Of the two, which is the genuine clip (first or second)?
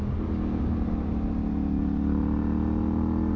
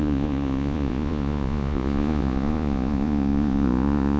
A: first